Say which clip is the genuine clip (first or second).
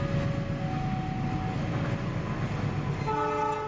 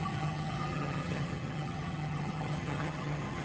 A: first